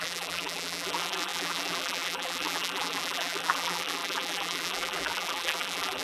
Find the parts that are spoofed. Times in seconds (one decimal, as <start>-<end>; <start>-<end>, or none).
0.0-6.0